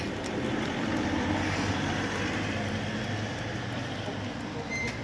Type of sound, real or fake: real